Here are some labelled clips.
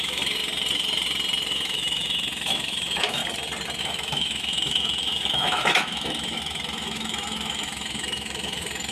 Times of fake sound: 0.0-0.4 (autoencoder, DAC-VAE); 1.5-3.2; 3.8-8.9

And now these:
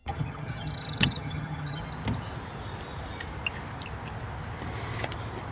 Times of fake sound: 0.0-1.8 (vocoder, HiFi-GAN)

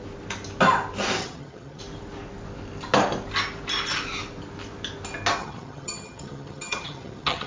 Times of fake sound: 1.2-1.8 (vocoder, HiFi-GAN); 5.4-7.5

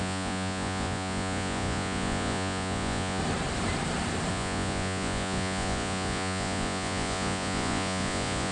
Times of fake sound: 0.0-3.2 (vocoder, Vocos); 4.3-8.5

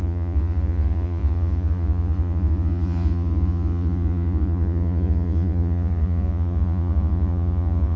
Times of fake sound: 0.0-8.0 (vocoder, Vocos)

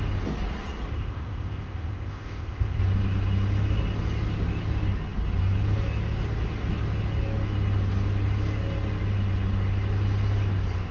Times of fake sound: 0.9-2.8 (codec, ZipCodec)

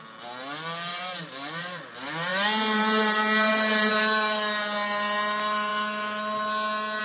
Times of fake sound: 0.9-1.8 (vocoder, BigVGAN v2)

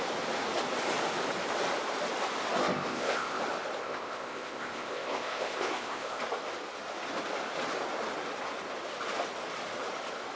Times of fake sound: 2.6-3.4 (codec, ZipCodec); 3.8-6.2